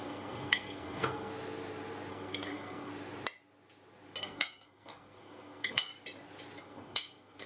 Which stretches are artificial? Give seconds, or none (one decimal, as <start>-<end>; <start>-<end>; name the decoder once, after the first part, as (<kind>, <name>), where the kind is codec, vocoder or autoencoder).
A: 0.0-1.3 (codec, SNAC); 2.1-2.9; 4.2-5.9; 6.6-7.5